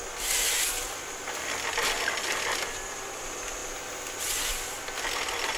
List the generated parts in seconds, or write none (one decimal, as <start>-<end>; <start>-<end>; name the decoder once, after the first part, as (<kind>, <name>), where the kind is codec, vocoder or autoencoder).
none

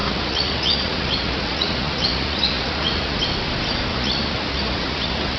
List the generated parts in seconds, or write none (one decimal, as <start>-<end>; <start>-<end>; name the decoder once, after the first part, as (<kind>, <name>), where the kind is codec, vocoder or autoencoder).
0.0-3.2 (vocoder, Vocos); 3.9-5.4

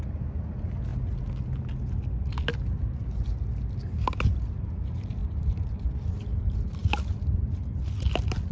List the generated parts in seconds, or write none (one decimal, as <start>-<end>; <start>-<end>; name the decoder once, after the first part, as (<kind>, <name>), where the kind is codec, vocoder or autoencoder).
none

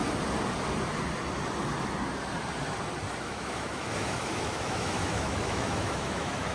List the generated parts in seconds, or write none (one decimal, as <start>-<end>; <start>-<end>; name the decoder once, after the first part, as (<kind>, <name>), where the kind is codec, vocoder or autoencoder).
3.2-6.5 (autoencoder, DAC-VAE)